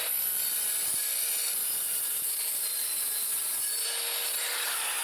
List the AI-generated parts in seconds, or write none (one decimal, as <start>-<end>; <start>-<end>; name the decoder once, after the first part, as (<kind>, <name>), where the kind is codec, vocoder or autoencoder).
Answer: 1.6-3.6 (vocoder, BigVGAN v2)